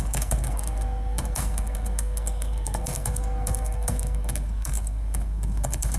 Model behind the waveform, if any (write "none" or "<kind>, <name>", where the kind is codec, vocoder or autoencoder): codec, SNAC